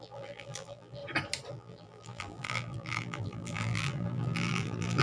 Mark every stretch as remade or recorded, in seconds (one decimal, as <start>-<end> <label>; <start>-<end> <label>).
0.0-1.0 remade; 1.0-1.5 recorded; 1.5-5.0 remade